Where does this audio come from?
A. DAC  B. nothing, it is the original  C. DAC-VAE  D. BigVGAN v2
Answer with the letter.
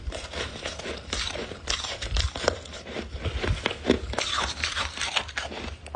D